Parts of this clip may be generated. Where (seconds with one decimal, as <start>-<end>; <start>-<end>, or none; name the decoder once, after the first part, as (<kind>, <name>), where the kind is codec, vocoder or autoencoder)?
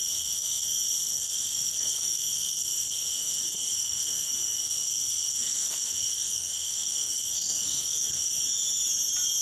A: 0.0-8.3 (codec, SNAC)